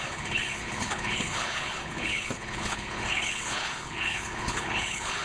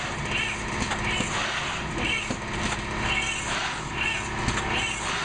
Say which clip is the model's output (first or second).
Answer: first